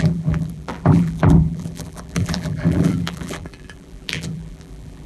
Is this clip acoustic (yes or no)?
no